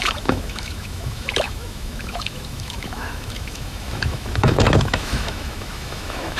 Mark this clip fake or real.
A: fake